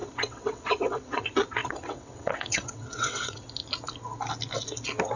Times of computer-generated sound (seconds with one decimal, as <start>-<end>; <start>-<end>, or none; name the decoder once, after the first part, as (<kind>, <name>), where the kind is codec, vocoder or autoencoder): 0.0-1.2 (vocoder, WaveNeXt); 1.6-3.5